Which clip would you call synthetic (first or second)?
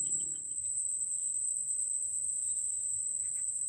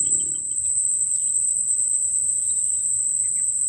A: first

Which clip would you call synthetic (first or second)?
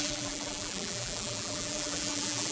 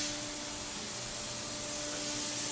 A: first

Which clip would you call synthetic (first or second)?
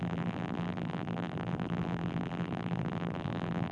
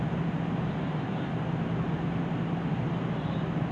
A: first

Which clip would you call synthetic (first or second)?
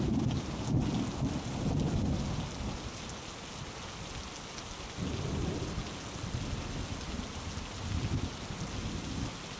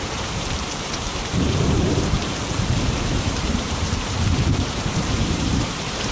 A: second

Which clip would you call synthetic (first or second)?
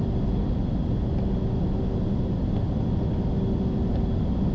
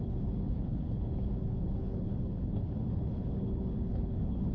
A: second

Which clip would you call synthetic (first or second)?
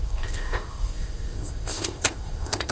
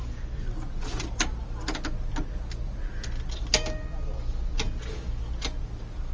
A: first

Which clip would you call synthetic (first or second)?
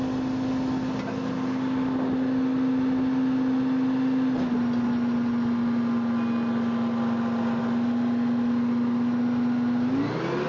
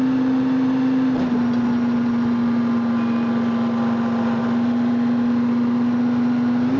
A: second